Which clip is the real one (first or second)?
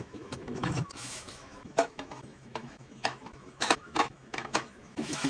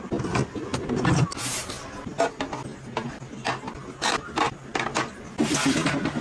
second